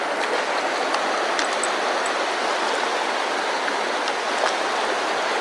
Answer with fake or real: real